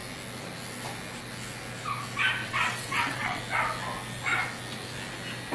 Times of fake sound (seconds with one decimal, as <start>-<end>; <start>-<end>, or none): 2.4-3.4